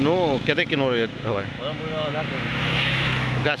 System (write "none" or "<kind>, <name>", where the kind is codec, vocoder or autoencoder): autoencoder, DAC-VAE